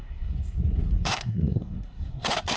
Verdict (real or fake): fake